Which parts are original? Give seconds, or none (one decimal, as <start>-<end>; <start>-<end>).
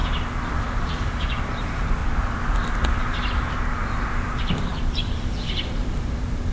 0.0-0.6; 2.0-3.5